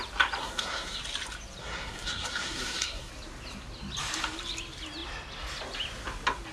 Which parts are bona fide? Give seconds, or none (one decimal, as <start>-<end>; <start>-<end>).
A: 0.0-0.4; 1.0-1.6; 3.1-6.5